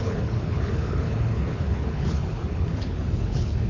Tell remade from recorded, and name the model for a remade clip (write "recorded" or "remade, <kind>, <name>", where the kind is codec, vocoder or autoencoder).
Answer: remade, codec, HILCodec